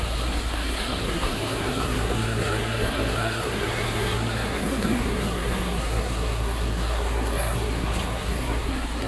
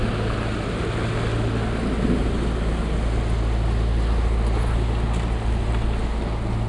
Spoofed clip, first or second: first